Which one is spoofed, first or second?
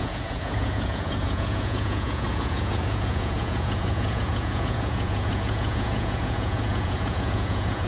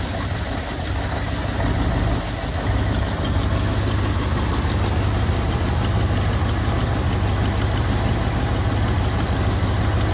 first